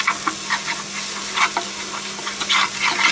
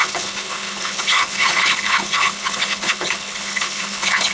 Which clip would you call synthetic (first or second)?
second